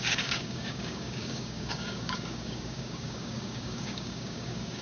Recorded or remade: remade